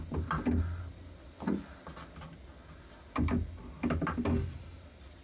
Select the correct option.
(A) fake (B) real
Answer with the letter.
B